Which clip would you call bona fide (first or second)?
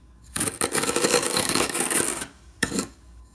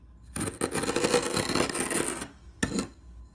second